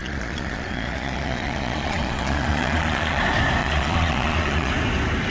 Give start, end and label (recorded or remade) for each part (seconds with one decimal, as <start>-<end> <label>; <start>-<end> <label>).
0.0-3.2 remade; 3.2-3.6 recorded; 3.6-4.7 remade; 4.7-5.3 recorded